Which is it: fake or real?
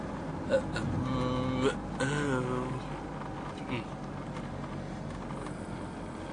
real